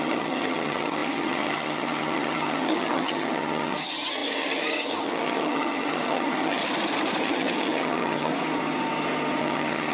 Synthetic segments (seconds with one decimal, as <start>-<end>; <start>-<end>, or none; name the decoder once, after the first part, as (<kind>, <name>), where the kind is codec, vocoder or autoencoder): 0.0-6.6 (vocoder, HiFi-GAN); 7.2-8.3; 9.4-9.9